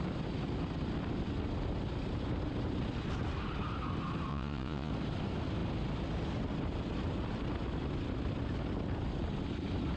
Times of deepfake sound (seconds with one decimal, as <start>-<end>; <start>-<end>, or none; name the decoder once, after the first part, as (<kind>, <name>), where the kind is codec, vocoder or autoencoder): 4.3-4.9 (vocoder, Vocos)

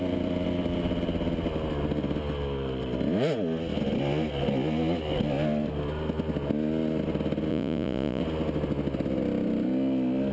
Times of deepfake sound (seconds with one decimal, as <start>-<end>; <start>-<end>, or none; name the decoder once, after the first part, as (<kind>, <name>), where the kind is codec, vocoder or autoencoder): 7.5-8.2 (vocoder, Vocos)

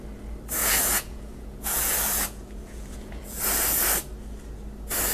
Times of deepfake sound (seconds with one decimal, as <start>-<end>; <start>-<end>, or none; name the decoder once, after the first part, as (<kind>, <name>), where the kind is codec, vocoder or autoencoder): 0.6-3.4 (vocoder, Vocos)

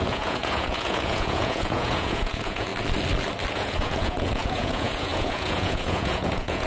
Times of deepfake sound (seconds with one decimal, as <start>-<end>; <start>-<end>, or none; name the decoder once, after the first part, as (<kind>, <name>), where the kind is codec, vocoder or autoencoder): 0.0-2.7 (vocoder, Vocos); 3.5-6.7

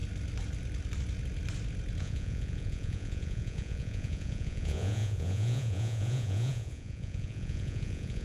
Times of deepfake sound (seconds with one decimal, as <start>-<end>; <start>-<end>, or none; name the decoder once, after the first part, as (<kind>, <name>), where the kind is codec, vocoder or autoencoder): 2.0-8.2 (vocoder, Vocos)